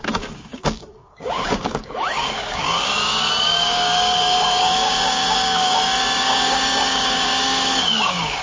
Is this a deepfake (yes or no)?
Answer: yes